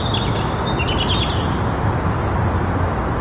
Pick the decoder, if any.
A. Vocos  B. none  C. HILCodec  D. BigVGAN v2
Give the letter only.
B